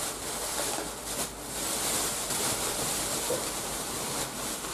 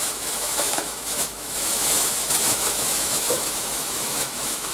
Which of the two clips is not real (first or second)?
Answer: second